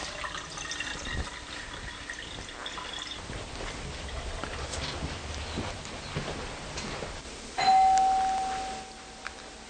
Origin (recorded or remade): recorded